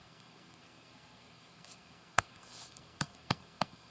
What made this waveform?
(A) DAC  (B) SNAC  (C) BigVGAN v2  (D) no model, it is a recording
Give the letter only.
B